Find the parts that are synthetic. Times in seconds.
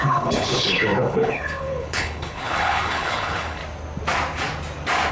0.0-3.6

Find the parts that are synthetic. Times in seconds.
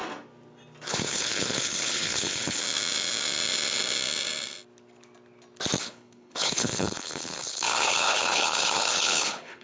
0.9-2.6; 5.8-9.6